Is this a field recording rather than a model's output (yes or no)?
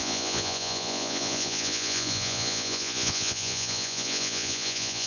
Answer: no